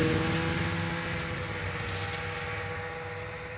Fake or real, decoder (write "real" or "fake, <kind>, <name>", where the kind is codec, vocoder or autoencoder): real